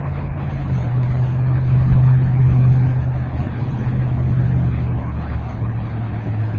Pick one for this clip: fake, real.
fake